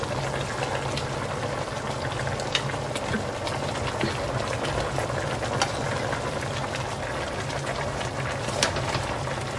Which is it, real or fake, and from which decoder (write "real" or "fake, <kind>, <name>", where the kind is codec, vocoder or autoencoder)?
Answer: real